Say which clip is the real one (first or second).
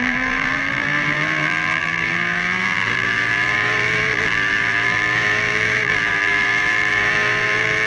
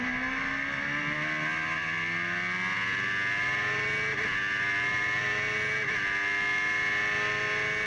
second